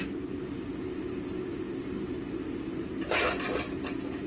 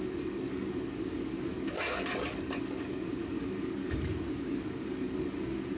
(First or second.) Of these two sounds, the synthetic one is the second